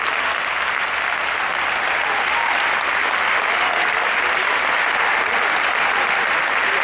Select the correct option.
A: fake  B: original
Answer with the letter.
B